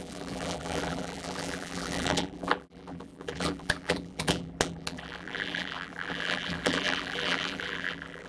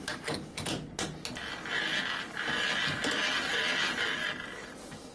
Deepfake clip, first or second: first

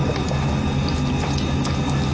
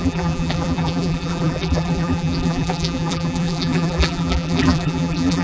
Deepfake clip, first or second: second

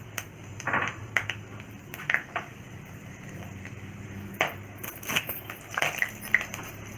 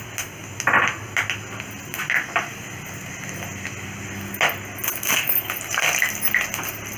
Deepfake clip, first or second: first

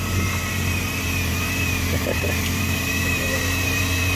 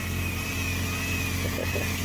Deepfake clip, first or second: first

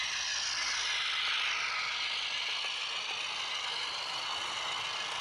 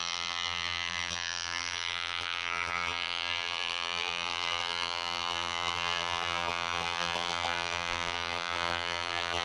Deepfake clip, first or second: second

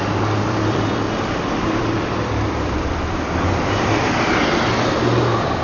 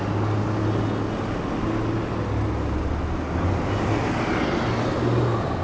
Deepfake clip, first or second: first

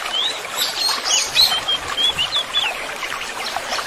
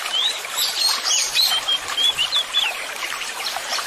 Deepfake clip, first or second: second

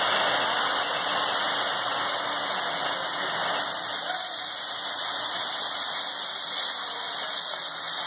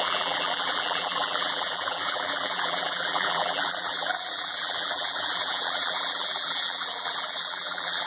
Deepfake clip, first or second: second